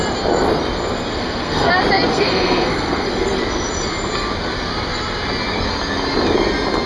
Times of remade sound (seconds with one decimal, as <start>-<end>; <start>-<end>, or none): 1.1-1.7; 2.1-3.4